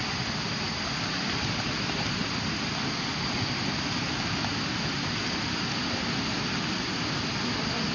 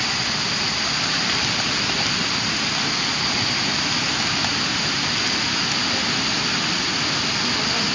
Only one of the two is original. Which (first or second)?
second